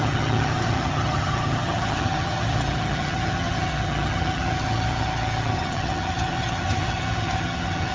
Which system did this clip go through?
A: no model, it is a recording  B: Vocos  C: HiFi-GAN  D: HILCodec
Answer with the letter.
C